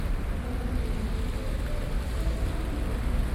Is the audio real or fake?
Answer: real